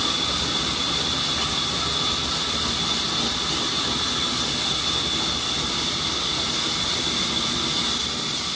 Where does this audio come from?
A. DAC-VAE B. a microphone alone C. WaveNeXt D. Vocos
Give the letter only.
B